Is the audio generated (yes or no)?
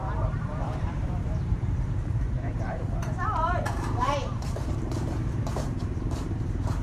yes